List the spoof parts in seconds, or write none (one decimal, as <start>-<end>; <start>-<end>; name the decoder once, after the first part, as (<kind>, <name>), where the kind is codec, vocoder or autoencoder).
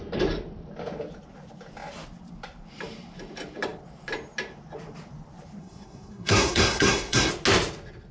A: 5.6-7.3 (codec, SNAC)